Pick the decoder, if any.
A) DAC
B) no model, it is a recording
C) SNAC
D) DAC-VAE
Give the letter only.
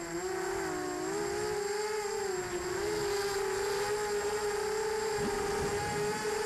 B